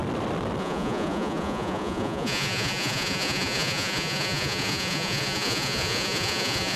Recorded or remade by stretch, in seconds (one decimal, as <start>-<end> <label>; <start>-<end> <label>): 0.0-0.6 recorded; 0.6-6.8 remade